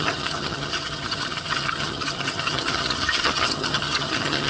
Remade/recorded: remade